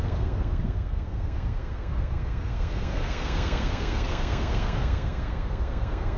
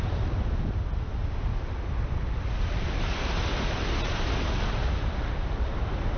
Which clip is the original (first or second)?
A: second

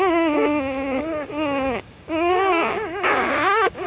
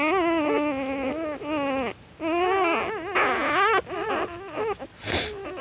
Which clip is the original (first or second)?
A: second